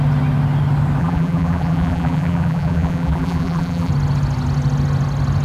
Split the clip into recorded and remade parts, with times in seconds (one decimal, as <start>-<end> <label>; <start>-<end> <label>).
0.0-1.0 recorded; 1.0-3.9 remade; 3.9-5.4 recorded